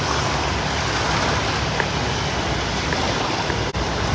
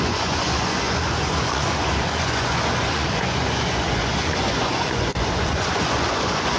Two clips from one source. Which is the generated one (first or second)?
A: second